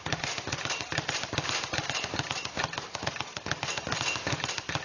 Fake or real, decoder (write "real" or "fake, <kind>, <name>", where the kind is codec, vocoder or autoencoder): real